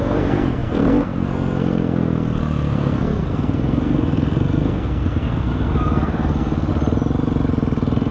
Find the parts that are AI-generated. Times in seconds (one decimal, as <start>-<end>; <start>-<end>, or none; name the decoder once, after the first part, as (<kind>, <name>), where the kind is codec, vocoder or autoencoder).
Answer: 0.0-6.7 (codec, SNAC)